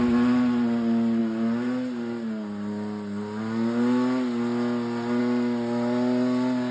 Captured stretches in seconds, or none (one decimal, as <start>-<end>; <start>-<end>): 0.0-6.7